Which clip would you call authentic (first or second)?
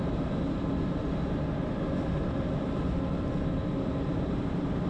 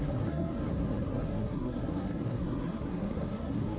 first